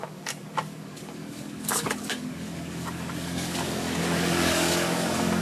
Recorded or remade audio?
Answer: remade